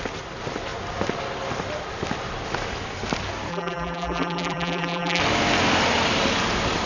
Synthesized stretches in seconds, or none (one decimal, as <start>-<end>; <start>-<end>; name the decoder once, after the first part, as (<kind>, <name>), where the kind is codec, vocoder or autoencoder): 3.5-5.2 (vocoder, BigVGAN v2)